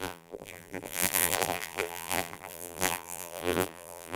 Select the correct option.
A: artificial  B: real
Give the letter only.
A